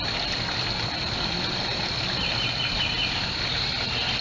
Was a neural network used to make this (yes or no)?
no